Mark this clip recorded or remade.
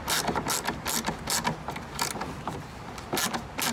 recorded